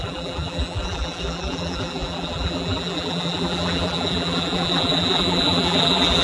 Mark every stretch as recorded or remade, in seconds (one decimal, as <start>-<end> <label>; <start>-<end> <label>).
0.0-6.2 remade